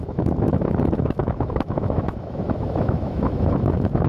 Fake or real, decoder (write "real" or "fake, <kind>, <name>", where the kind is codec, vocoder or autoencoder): fake, autoencoder, DAC-VAE